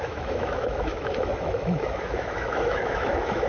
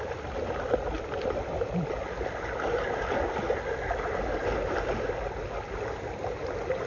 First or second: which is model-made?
first